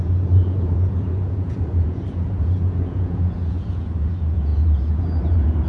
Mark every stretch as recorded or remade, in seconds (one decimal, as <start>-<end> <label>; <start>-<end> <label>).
0.0-5.7 remade

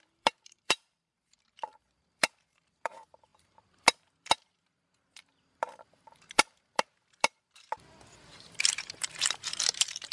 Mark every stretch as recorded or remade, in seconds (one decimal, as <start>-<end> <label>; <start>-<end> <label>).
0.0-10.1 remade

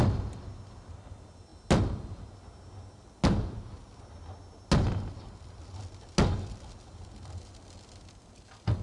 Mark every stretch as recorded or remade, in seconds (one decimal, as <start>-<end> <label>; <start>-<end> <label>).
0.0-8.8 recorded

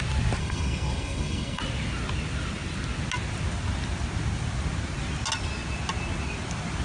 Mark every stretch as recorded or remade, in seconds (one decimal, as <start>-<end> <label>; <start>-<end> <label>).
0.0-0.4 recorded; 0.4-1.6 remade; 1.6-6.8 recorded